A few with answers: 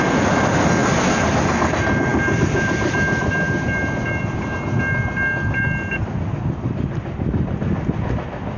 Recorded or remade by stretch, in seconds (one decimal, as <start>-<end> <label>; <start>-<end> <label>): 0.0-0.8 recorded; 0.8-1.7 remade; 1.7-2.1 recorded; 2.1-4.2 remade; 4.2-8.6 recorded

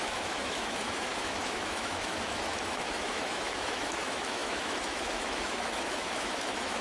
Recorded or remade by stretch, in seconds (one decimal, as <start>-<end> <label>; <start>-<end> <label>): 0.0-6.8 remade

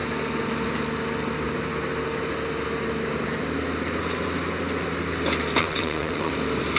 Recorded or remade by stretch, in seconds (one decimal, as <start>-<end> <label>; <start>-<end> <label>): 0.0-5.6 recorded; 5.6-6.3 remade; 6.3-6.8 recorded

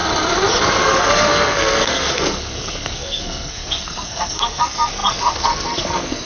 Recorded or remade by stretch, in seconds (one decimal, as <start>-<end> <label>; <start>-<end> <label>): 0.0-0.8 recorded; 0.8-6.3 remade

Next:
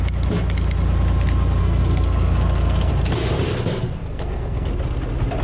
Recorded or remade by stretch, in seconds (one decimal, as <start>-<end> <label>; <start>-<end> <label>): 0.0-1.6 recorded; 1.6-2.9 remade; 2.9-4.0 recorded; 4.0-4.7 remade; 4.7-5.4 recorded